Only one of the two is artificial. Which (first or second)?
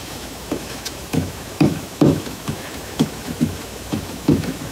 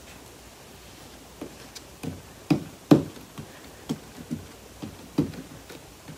first